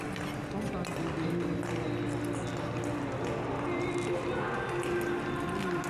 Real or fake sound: real